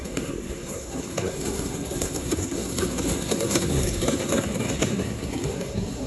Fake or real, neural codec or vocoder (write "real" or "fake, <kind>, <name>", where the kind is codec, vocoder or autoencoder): fake, codec, SNAC